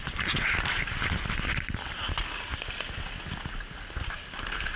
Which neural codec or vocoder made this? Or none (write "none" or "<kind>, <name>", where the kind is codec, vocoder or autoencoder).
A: none